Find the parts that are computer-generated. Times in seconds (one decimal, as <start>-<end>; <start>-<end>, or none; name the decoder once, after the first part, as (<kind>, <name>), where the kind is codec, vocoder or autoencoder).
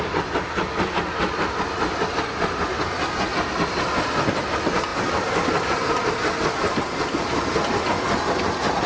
none